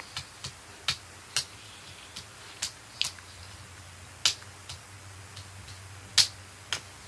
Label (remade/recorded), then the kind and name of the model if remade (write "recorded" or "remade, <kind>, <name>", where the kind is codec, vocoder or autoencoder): recorded